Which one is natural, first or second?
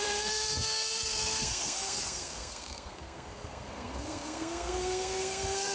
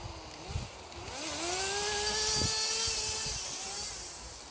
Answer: second